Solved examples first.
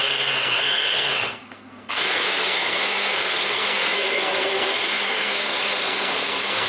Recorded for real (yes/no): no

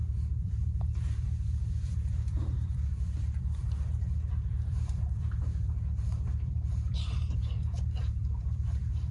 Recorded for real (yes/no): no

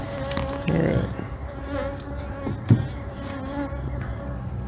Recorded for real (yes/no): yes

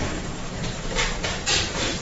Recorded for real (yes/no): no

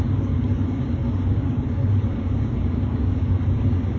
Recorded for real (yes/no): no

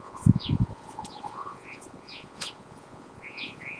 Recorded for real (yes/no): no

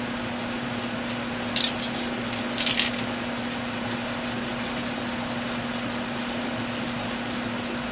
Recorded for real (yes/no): yes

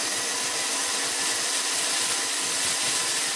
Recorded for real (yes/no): yes